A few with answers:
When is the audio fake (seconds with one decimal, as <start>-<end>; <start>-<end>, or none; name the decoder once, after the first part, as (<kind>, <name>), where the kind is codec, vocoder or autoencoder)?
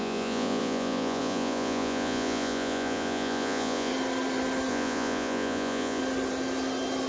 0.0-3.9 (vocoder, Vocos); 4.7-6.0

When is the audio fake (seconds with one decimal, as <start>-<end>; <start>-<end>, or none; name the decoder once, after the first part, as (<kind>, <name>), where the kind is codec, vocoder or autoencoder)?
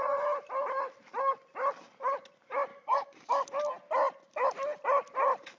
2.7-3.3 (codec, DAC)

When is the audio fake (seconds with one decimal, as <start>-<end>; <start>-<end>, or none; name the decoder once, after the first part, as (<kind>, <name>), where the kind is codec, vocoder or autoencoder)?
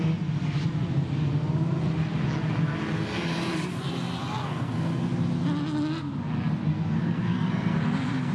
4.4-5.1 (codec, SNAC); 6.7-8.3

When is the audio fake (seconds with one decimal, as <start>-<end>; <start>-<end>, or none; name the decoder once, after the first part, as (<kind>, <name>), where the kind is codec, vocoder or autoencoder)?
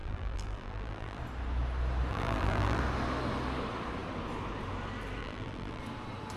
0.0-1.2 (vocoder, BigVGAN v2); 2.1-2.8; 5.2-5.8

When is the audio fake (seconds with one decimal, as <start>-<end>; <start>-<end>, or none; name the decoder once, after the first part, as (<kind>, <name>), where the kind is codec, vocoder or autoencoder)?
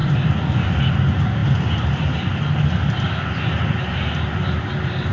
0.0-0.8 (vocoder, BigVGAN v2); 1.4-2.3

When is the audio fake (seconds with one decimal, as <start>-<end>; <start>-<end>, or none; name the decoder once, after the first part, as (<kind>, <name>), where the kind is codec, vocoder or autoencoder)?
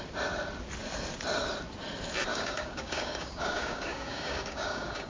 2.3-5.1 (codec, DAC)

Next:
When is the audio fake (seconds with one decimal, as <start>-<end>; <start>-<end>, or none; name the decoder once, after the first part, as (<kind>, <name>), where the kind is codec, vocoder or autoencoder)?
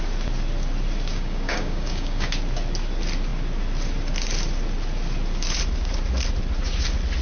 1.1-2.3 (codec, DAC)